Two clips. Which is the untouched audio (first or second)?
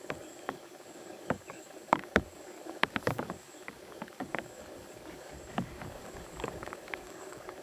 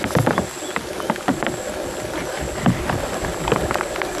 second